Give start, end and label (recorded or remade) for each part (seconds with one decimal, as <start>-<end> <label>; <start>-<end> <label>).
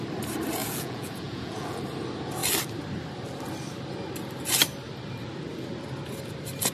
0.0-0.6 recorded; 0.6-1.8 remade; 1.8-6.7 recorded